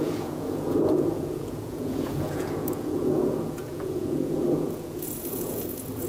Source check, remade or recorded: remade